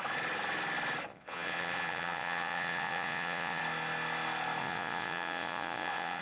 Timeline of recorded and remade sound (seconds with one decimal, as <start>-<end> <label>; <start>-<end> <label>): 0.0-1.1 recorded; 1.1-3.6 remade; 3.6-4.6 recorded; 4.6-6.2 remade